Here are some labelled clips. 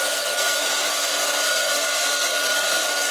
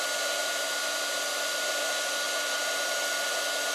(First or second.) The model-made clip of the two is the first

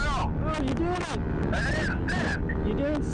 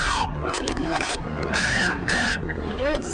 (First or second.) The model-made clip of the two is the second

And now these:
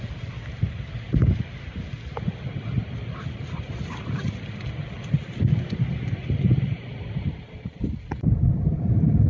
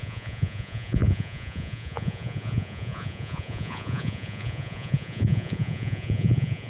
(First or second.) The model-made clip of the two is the second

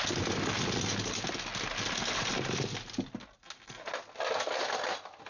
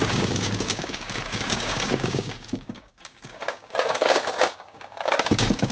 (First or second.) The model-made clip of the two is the second